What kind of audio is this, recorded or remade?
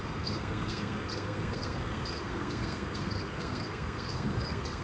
remade